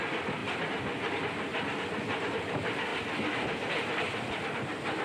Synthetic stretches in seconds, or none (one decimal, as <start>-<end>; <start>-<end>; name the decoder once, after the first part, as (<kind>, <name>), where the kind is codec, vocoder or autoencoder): 0.0-2.9 (vocoder, BigVGAN v2); 3.7-5.0